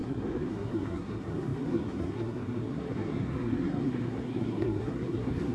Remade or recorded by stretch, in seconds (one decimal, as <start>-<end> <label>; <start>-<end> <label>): 0.0-5.5 remade